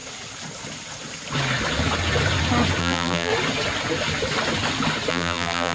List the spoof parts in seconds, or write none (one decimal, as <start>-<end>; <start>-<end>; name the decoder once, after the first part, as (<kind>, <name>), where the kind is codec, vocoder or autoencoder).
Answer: 2.8-3.3 (vocoder, BigVGAN v2); 5.1-5.7